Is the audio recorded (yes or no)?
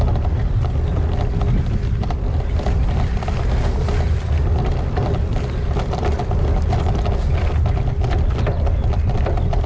yes